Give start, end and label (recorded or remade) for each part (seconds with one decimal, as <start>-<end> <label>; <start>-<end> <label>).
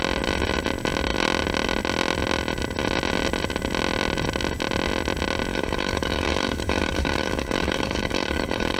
0.0-5.5 recorded; 5.5-8.8 remade